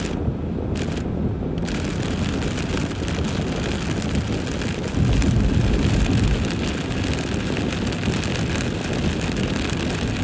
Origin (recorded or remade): recorded